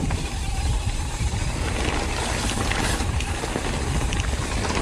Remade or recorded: recorded